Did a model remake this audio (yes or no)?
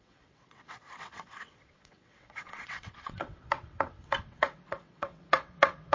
yes